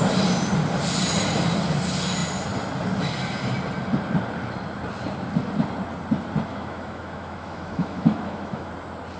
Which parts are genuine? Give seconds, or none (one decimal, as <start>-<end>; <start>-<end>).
0.0-6.5; 8.7-9.2